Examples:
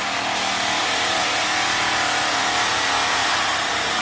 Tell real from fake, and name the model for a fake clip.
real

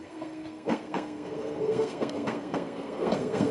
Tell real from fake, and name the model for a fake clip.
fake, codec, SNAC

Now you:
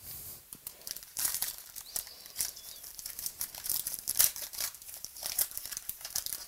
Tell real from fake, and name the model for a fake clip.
fake, vocoder, BigVGAN v2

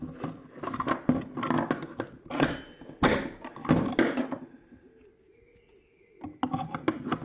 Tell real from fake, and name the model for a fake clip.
real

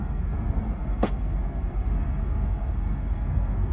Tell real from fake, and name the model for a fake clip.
fake, codec, SNAC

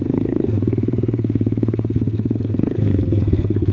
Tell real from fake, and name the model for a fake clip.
fake, codec, SNAC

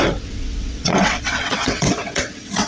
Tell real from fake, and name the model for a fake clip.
fake, vocoder, WaveNeXt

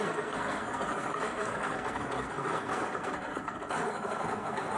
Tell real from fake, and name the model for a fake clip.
fake, codec, SNAC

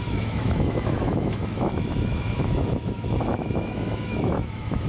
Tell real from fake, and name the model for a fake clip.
fake, autoencoder, DAC-VAE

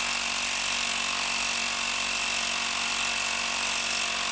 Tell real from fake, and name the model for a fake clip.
real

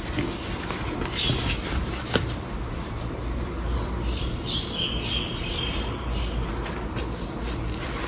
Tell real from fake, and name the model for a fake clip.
real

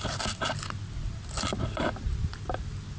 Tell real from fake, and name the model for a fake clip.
real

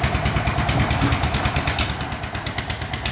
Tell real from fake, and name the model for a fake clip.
real